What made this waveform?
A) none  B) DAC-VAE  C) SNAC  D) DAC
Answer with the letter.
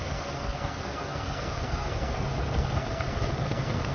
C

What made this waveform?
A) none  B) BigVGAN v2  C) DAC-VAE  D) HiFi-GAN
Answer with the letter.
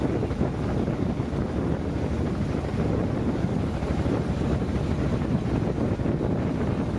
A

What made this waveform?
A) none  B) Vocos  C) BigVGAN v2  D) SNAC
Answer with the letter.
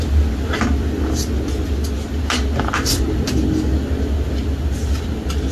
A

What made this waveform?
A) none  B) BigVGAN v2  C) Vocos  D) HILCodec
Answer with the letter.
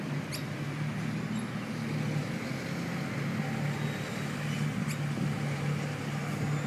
A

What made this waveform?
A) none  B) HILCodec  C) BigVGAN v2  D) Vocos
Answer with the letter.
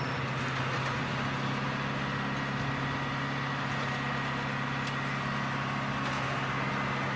A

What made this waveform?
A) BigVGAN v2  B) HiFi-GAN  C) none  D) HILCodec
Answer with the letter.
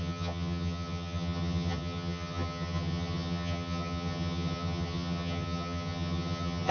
B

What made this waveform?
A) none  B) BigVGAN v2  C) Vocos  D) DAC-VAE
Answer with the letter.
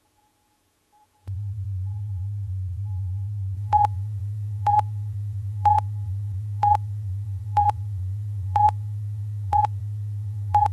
C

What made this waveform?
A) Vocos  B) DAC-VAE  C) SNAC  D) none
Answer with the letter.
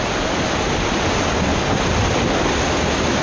D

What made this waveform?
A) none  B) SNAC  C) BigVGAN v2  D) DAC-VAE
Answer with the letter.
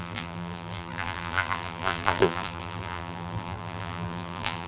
C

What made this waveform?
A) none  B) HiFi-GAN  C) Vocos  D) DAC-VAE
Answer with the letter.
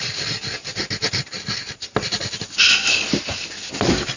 A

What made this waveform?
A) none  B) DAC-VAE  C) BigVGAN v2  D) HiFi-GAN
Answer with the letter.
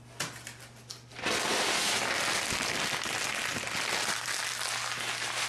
A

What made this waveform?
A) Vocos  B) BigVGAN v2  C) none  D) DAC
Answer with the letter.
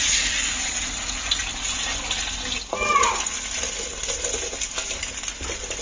C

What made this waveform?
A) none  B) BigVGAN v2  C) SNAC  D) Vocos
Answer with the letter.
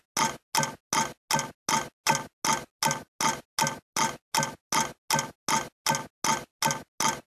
A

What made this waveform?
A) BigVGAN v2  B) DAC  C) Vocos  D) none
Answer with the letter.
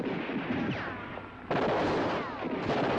D